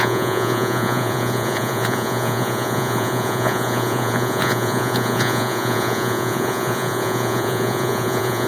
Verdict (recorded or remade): remade